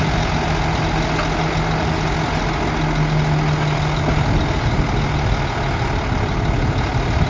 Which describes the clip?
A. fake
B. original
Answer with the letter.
B